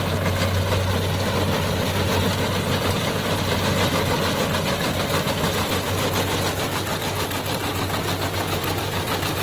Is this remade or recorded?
recorded